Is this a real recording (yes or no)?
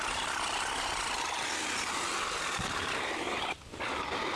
yes